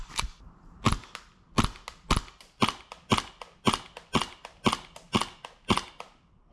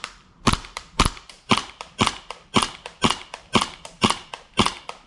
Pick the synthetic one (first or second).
second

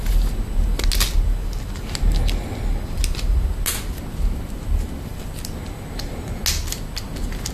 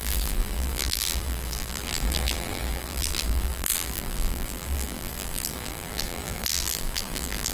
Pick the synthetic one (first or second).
second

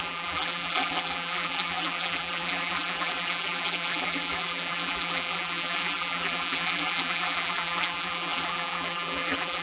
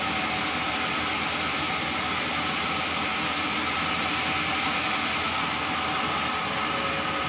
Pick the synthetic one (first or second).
first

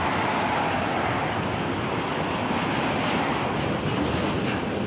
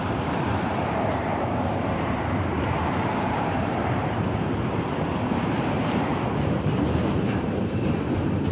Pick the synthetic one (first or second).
second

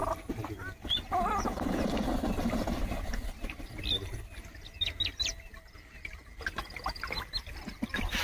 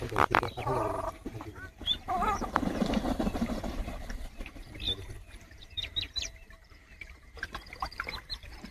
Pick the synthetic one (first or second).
second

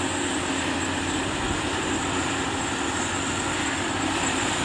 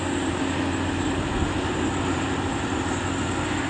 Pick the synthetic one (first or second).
first